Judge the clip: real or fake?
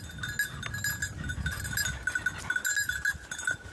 real